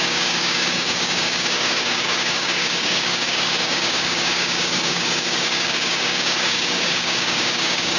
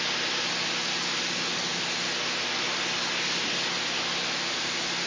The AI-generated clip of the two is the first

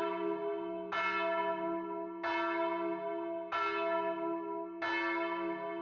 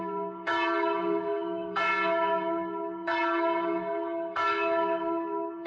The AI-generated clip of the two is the second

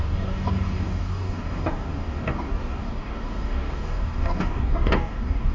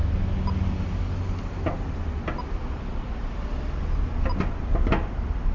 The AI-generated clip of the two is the first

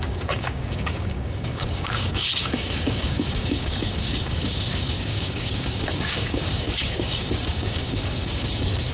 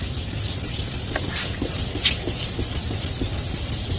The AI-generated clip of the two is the first